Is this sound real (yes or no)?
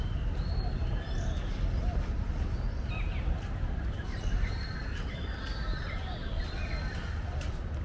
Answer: yes